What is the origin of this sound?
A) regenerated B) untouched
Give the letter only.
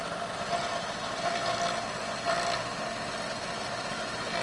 B